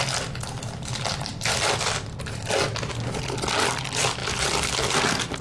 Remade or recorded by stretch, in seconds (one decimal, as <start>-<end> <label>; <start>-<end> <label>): 0.0-1.3 recorded; 1.3-2.9 remade; 2.9-4.2 recorded; 4.2-5.0 remade; 5.0-5.4 recorded